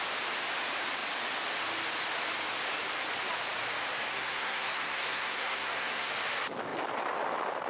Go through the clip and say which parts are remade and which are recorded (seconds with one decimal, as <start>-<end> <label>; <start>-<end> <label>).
0.0-4.1 recorded; 4.1-6.1 remade; 6.1-7.7 recorded